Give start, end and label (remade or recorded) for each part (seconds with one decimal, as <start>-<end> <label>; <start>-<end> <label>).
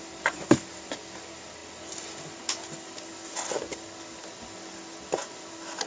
0.0-5.9 recorded